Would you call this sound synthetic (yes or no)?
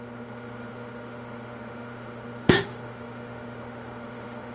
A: yes